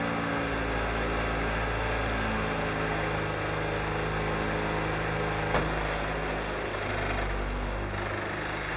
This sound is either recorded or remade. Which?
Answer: recorded